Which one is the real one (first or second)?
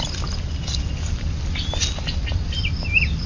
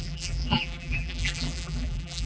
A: first